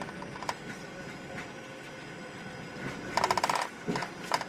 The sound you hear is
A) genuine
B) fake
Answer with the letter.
A